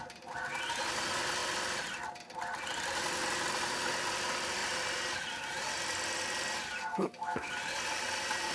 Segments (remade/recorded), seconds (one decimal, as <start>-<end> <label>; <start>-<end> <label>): 0.0-6.9 recorded; 6.9-7.5 remade; 7.5-8.5 recorded